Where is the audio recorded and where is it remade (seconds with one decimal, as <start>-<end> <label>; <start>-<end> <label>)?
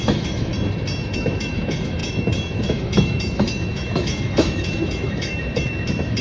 0.0-0.5 remade; 0.5-1.1 recorded; 1.1-6.2 remade